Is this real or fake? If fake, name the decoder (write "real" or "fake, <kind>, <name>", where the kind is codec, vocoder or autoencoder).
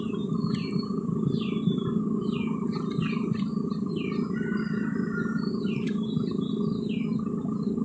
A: real